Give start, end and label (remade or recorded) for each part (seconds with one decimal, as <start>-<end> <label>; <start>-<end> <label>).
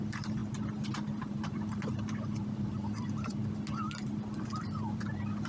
0.0-0.4 remade; 0.4-1.2 recorded; 1.2-3.4 remade; 3.4-4.4 recorded; 4.4-5.5 remade